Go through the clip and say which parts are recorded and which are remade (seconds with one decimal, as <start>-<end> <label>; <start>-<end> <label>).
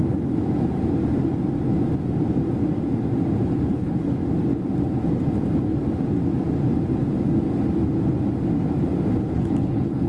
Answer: 0.0-3.7 recorded; 3.7-4.2 remade; 4.2-9.2 recorded; 9.2-10.1 remade